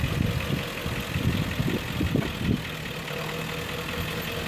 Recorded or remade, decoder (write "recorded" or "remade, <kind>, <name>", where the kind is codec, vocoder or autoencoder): recorded